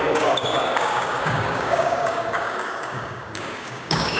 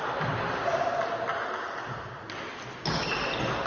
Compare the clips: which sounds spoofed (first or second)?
first